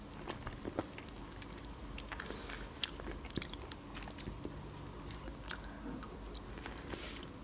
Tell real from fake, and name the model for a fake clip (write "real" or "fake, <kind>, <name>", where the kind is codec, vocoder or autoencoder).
real